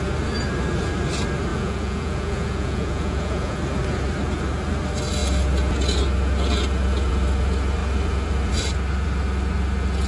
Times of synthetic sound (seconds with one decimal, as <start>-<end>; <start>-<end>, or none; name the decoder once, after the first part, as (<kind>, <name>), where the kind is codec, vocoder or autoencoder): 1.5-3.6 (vocoder, Vocos)